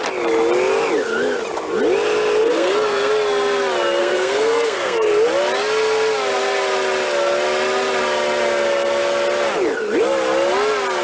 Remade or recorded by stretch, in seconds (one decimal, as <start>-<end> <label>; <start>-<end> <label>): 0.0-2.4 recorded; 2.4-3.1 remade; 3.1-4.0 recorded; 4.0-5.1 remade; 5.1-11.0 recorded